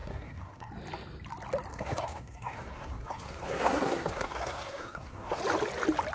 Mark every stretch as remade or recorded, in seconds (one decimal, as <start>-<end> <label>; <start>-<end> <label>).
0.0-0.7 remade; 0.7-1.7 recorded; 1.7-5.4 remade; 5.4-6.1 recorded